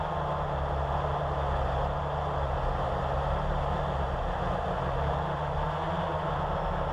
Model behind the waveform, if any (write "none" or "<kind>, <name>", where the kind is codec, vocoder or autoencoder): none